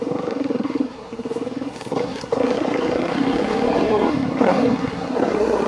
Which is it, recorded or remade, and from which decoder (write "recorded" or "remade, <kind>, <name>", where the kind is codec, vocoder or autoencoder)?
remade, codec, SNAC